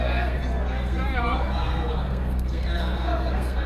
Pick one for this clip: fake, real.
fake